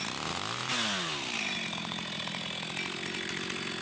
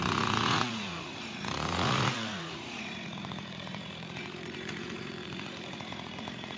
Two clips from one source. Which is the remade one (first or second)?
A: second